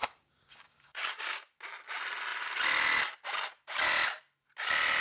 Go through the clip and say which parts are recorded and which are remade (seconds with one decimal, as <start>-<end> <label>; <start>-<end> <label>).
0.0-1.6 remade; 1.6-5.0 recorded